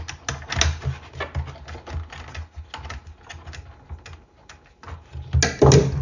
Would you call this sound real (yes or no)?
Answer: yes